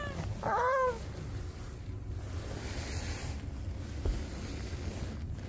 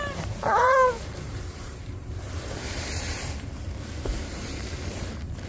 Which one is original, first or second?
first